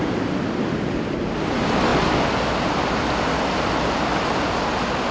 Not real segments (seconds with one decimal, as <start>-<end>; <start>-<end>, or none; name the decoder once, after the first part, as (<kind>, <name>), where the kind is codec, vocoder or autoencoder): none